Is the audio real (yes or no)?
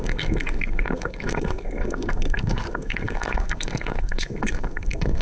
no